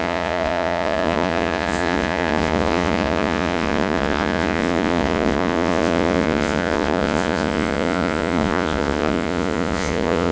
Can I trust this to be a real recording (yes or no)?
no